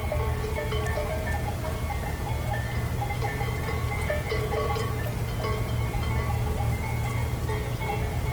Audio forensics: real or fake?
real